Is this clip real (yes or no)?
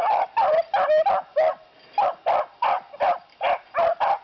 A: yes